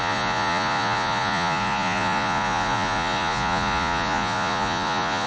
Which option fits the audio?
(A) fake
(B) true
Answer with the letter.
A